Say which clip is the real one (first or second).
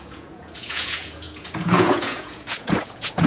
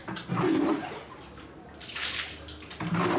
second